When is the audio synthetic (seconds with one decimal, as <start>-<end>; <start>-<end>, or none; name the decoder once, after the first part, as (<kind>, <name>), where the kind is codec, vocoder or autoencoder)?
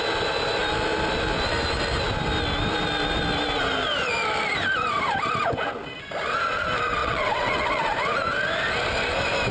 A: 7.0-7.9 (vocoder, WaveNeXt)